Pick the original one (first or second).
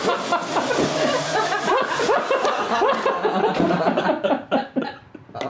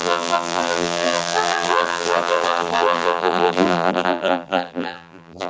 first